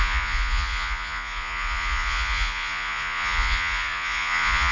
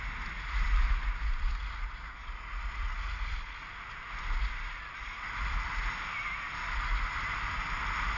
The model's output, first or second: first